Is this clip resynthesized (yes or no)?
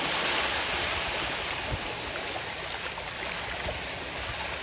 no